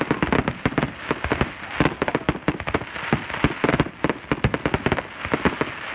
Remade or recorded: recorded